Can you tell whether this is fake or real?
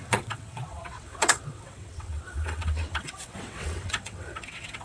fake